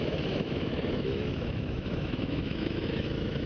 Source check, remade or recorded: remade